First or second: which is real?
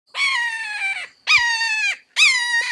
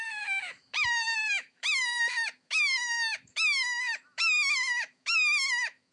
first